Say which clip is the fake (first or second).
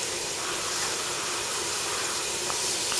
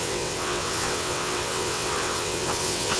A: second